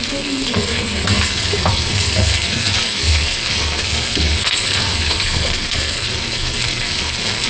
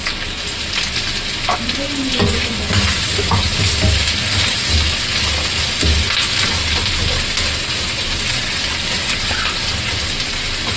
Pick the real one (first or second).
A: second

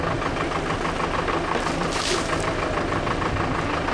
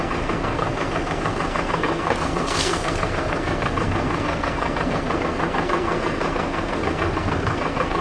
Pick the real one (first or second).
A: first